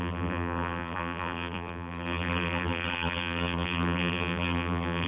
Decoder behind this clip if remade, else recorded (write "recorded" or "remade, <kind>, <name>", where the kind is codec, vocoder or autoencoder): remade, vocoder, BigVGAN v2